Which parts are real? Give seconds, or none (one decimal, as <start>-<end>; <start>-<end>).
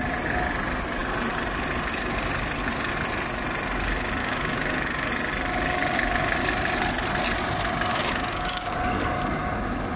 0.0-4.2; 5.1-7.9; 8.8-10.0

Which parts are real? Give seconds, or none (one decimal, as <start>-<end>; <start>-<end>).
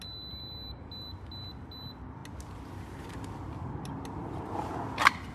0.0-5.3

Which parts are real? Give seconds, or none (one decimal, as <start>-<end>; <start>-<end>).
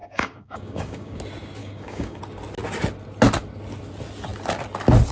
1.2-1.6; 2.2-5.1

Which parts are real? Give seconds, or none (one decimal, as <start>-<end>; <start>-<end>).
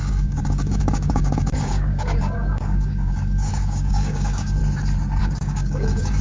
4.6-5.2